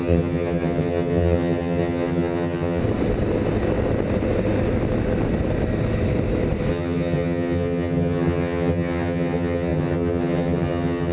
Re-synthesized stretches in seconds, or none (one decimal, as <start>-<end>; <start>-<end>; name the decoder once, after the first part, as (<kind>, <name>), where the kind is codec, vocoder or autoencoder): 0.0-2.8 (vocoder, HiFi-GAN); 6.7-11.1